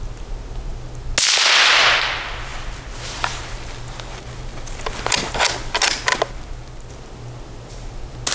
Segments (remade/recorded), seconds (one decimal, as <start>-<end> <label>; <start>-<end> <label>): 0.0-8.3 recorded